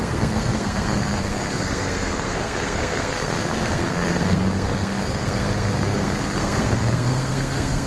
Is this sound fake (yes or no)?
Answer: yes